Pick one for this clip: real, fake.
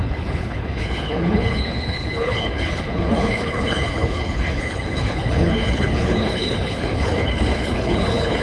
fake